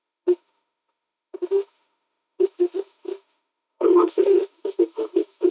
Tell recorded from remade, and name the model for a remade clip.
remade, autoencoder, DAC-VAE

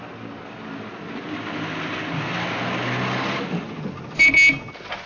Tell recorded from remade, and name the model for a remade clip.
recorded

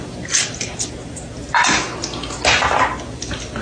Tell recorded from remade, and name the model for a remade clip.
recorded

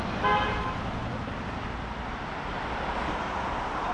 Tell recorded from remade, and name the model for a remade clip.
recorded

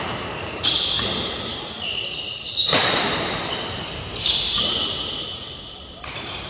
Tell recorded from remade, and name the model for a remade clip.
recorded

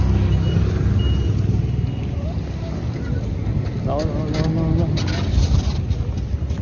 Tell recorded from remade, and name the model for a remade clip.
recorded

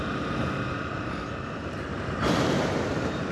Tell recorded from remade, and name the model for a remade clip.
remade, vocoder, BigVGAN v2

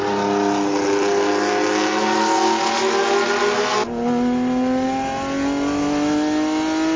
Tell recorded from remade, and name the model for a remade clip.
recorded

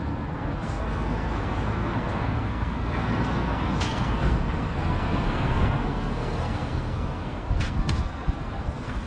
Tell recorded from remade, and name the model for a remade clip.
remade, codec, SNAC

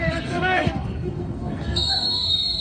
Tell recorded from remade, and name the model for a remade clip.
remade, codec, SNAC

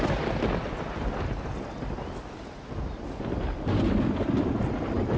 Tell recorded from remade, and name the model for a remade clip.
recorded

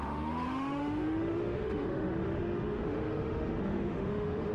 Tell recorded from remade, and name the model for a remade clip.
remade, autoencoder, DAC-VAE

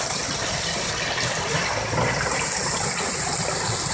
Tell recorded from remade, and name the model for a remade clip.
remade, vocoder, BigVGAN v2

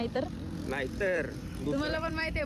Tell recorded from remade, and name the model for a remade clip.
remade, vocoder, BigVGAN v2